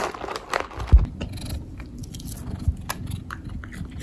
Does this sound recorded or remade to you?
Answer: recorded